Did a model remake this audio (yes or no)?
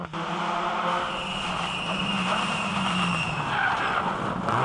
no